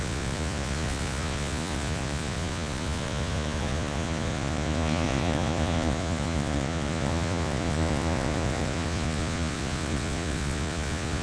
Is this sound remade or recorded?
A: remade